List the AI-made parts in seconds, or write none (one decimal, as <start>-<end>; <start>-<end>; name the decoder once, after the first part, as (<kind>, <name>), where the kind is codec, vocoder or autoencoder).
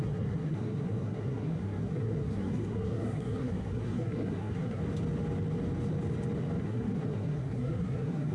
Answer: 0.0-4.8 (codec, SNAC); 6.6-8.3